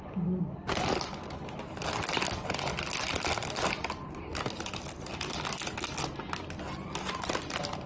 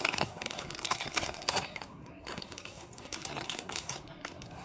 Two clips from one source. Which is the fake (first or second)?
second